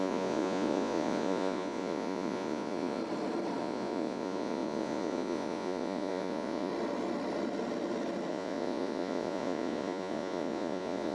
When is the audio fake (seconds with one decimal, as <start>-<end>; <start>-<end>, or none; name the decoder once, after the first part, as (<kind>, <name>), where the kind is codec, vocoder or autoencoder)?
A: 0.0-3.0 (vocoder, Vocos); 3.6-6.7; 8.3-11.1